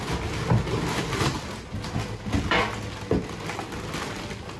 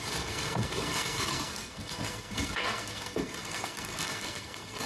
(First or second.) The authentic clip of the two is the first